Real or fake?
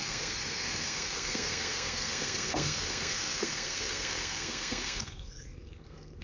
fake